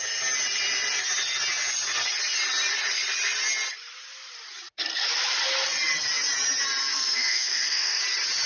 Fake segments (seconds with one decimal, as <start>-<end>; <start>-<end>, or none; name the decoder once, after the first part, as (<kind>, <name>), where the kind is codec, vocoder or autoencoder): 6.9-8.0 (codec, SNAC)